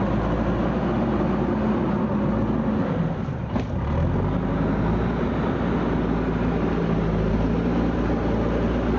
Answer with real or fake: real